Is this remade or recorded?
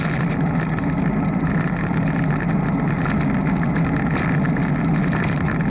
recorded